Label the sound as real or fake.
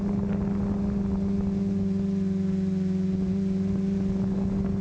real